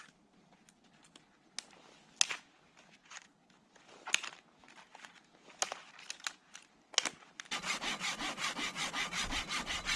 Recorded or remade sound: recorded